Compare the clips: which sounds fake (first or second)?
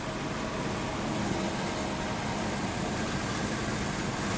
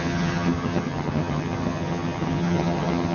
second